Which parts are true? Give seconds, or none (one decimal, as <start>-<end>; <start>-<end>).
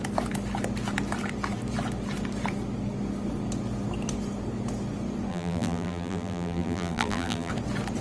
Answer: 0.0-5.3; 7.5-8.0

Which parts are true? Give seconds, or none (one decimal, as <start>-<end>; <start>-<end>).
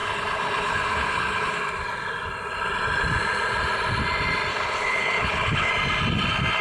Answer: 1.6-4.5; 5.7-6.6